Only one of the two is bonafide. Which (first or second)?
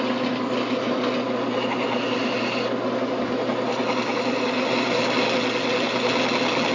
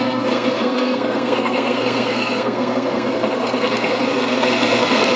first